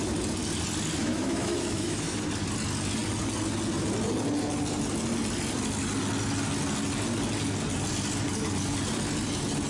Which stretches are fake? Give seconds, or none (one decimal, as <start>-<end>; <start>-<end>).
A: 1.0-2.1